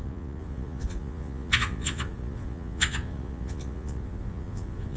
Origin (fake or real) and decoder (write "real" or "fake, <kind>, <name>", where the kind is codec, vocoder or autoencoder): fake, vocoder, Vocos